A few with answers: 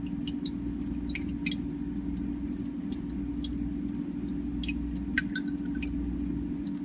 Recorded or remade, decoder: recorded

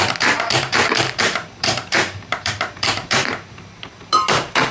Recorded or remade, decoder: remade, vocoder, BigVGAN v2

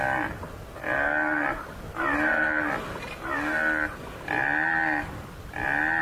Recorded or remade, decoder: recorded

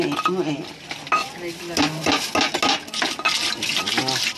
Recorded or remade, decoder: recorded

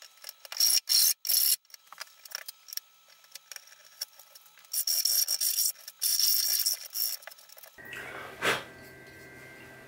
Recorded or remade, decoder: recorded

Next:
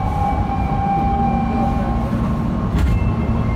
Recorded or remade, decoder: recorded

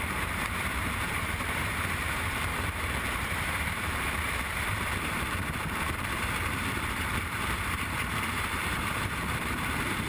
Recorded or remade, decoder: remade, vocoder, BigVGAN v2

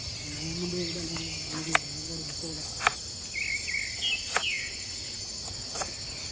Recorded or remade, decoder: recorded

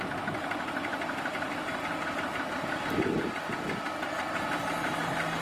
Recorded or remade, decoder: recorded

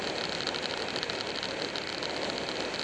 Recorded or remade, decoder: recorded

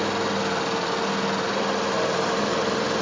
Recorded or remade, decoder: recorded